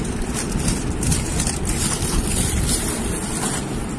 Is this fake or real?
fake